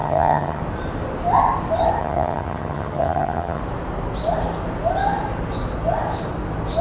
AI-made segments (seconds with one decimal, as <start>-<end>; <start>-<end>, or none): 0.0-0.6; 2.0-3.6